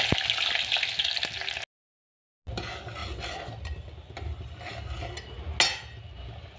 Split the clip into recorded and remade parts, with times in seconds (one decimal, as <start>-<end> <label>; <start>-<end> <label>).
0.0-6.6 recorded